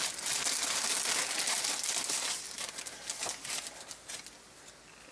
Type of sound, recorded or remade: recorded